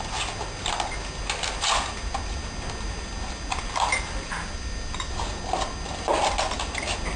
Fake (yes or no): no